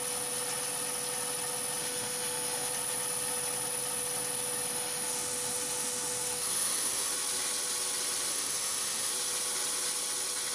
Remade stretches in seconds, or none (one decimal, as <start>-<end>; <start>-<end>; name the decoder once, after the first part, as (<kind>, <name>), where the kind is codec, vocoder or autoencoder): 1.8-2.7 (autoencoder, DAC-VAE); 4.7-7.1; 8.3-9.1